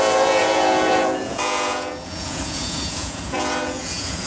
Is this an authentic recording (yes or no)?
no